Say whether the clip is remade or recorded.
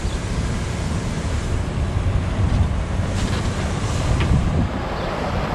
remade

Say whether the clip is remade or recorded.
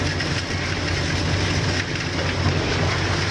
recorded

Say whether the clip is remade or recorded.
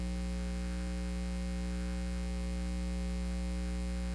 recorded